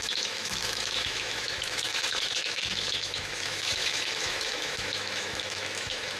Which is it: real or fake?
fake